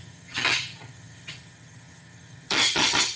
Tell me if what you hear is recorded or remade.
remade